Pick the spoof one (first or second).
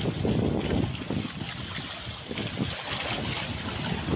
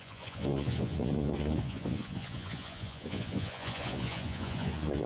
second